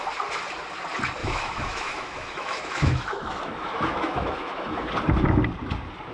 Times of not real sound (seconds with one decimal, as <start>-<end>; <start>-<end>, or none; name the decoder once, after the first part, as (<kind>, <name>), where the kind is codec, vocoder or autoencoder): 1.2-4.9 (autoencoder, DAC-VAE)